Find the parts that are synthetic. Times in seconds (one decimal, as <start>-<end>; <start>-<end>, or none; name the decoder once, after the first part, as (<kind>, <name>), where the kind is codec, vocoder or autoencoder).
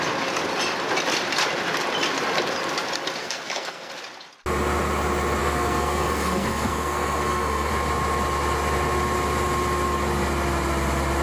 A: 3.2-3.9 (codec, SNAC); 5.4-7.7